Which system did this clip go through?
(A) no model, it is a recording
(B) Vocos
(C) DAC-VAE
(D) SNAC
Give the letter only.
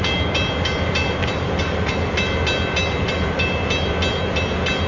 A